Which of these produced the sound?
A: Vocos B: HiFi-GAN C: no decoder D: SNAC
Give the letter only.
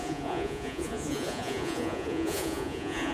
A